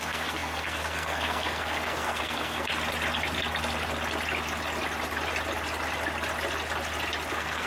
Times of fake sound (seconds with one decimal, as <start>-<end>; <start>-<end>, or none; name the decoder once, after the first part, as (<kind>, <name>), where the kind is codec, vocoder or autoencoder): 0.0-2.7 (codec, SNAC); 7.3-7.7